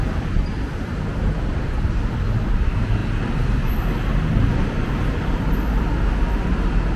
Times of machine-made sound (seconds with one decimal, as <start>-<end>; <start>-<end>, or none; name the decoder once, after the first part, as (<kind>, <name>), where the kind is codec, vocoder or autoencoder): none